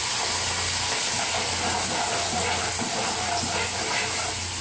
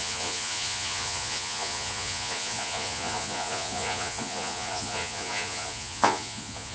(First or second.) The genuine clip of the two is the first